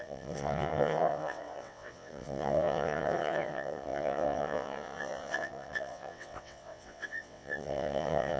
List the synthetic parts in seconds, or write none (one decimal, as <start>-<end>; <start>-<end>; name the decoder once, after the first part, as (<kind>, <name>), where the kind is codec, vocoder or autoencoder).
0.0-8.4 (vocoder, WaveNeXt)